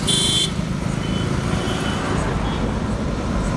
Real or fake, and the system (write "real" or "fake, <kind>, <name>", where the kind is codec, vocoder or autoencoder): fake, vocoder, BigVGAN v2